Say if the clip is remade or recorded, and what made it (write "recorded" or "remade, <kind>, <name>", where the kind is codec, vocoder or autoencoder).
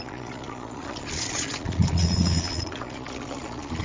remade, vocoder, Vocos